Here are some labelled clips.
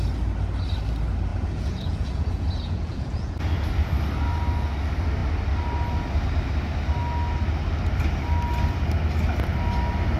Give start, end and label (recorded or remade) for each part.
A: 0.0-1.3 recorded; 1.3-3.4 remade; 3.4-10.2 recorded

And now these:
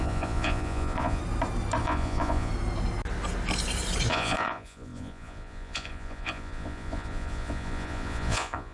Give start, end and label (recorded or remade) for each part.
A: 0.0-1.2 remade; 1.2-1.8 recorded; 1.8-2.5 remade; 2.5-4.1 recorded; 4.1-8.7 remade

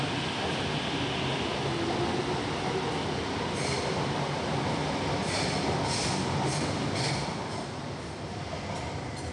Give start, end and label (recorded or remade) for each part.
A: 0.0-9.3 recorded

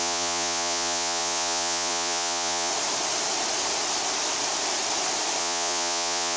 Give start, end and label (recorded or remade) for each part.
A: 0.0-2.7 remade; 2.7-5.4 recorded; 5.4-6.4 remade

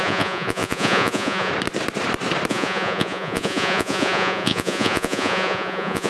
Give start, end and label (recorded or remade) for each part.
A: 0.0-1.5 remade; 1.5-2.5 recorded; 2.5-6.1 remade

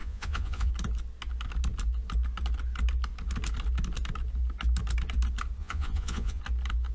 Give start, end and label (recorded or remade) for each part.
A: 0.0-0.7 remade; 0.7-5.6 recorded; 5.6-6.4 remade; 6.4-6.9 recorded